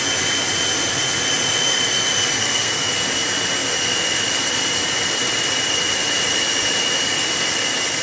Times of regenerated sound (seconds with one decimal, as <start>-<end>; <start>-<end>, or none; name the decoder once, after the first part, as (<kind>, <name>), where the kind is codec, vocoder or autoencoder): 2.4-2.9 (codec, SNAC)